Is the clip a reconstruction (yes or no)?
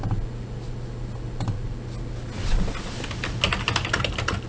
no